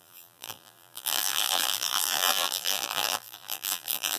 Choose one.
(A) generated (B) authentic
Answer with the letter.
A